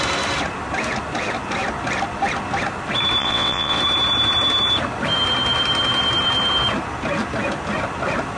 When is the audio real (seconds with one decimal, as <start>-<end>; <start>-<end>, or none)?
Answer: 0.0-3.2; 3.8-8.4